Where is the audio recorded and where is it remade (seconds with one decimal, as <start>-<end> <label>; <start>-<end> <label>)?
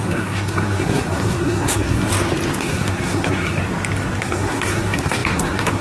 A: 0.0-2.1 remade; 2.1-2.6 recorded; 2.6-3.6 remade; 3.6-4.2 recorded; 4.2-5.8 remade